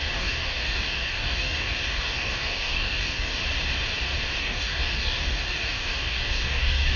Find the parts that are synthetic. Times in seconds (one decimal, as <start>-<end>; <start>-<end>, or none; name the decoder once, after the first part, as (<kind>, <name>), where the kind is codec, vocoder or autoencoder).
0.0-3.4 (codec, DAC); 4.4-7.0